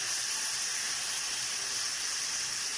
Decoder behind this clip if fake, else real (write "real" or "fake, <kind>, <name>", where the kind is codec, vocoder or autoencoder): real